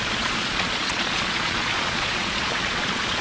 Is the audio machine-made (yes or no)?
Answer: yes